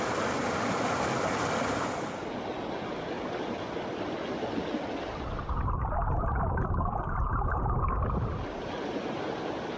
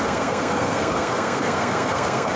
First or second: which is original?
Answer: first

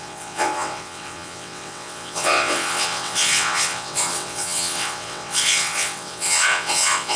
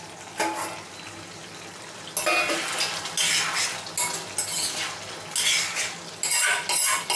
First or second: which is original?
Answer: second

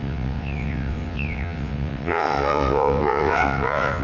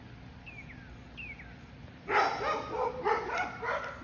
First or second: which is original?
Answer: second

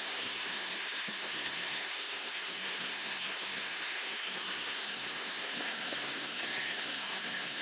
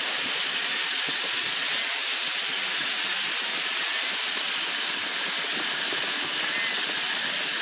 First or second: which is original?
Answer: second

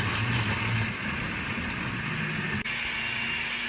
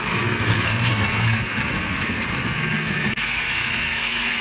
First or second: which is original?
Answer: first